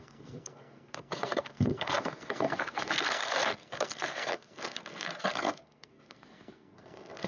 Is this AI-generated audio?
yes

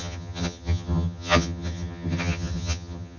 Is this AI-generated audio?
yes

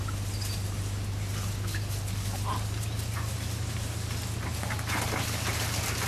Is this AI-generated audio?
no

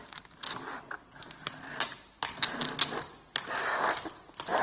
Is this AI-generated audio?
no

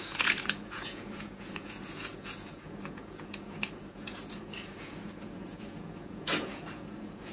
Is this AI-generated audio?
yes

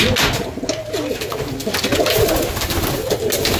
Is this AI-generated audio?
no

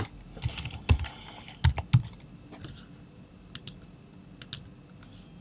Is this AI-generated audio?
no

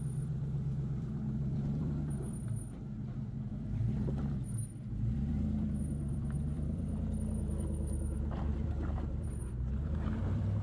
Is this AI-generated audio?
yes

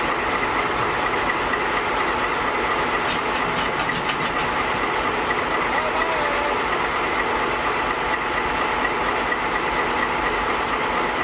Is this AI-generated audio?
no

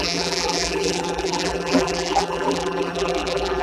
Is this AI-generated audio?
yes